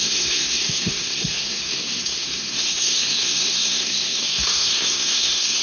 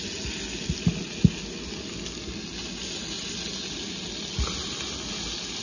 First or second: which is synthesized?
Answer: first